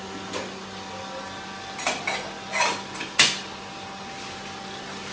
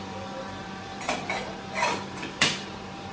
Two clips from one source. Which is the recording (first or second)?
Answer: first